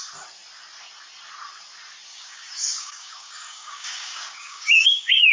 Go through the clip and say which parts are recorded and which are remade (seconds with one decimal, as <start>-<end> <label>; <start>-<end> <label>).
0.0-2.1 recorded; 2.1-5.3 remade